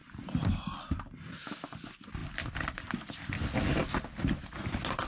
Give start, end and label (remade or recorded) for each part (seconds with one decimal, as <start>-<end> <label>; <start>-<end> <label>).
0.0-5.1 recorded